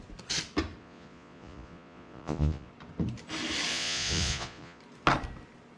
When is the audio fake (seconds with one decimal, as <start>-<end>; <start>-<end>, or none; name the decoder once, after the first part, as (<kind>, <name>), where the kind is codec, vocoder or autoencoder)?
0.8-2.7 (vocoder, Vocos); 3.7-4.8